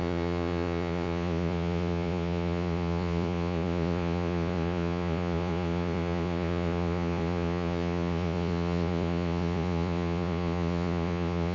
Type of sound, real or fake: fake